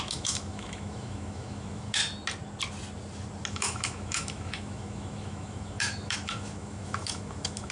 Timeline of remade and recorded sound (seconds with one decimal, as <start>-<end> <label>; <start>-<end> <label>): 0.0-2.0 remade; 2.0-3.5 recorded; 3.5-7.7 remade